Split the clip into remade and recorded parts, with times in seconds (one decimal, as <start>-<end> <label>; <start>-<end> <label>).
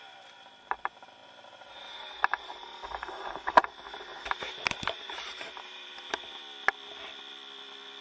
0.0-1.2 recorded; 1.2-3.5 remade; 3.5-4.1 recorded; 4.1-5.9 remade; 5.9-8.0 recorded